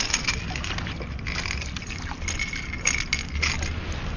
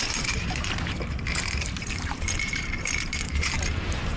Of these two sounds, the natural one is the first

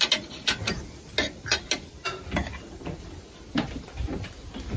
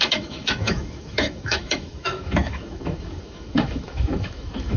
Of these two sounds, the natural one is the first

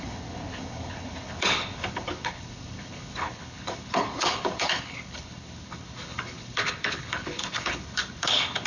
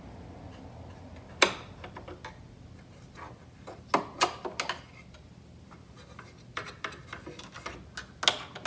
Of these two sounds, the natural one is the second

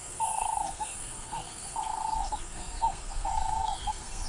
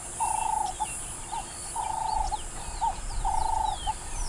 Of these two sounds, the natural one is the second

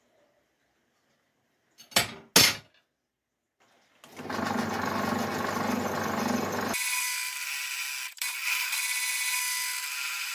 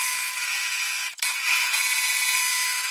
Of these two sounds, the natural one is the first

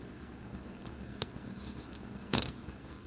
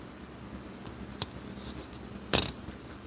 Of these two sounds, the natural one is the second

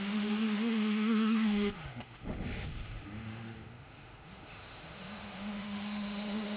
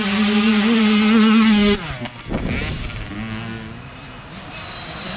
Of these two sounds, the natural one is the second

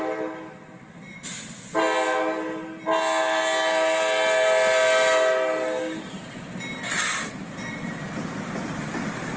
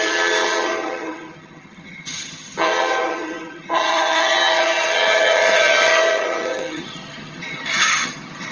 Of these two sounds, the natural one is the first